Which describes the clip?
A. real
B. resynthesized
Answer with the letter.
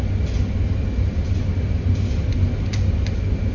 A